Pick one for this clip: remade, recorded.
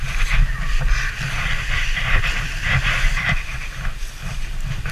recorded